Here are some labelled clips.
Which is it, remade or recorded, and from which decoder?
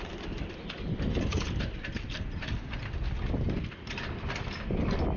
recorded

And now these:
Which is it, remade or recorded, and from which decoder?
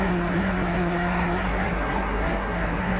remade, codec, SNAC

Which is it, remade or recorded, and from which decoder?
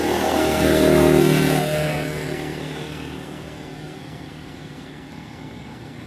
remade, codec, SNAC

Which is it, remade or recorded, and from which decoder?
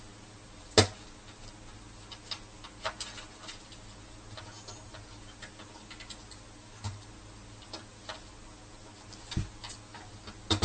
recorded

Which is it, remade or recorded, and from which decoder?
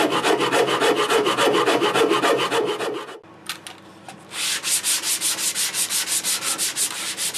recorded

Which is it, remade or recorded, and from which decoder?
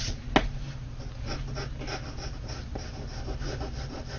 recorded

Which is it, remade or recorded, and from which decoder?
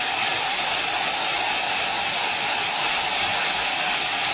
recorded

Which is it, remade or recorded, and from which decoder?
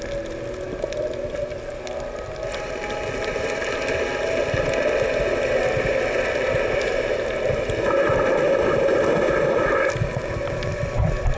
recorded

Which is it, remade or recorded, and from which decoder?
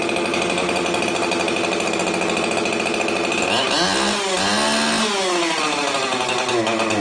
recorded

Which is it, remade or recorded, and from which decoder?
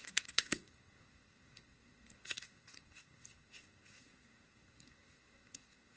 remade, codec, SNAC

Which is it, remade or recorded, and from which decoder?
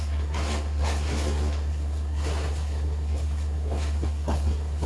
remade, codec, SNAC